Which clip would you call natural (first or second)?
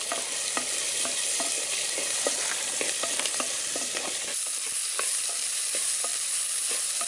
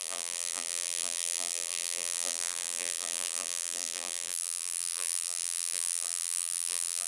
first